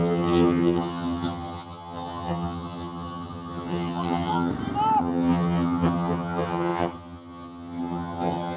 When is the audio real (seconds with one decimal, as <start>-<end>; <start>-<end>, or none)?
4.5-5.0